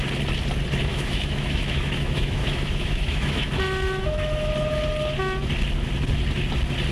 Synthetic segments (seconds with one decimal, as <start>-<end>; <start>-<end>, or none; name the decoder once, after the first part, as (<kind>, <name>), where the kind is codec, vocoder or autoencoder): 0.9-3.5 (autoencoder, DAC-VAE); 4.0-4.5